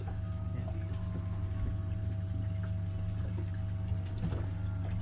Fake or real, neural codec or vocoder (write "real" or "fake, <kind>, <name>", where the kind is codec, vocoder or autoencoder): real